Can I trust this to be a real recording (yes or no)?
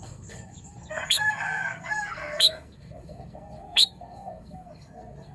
no